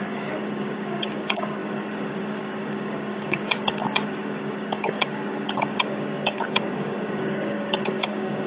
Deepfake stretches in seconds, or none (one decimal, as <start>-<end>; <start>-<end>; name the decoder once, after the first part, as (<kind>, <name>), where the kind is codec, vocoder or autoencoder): 0.0-8.5 (codec, DAC)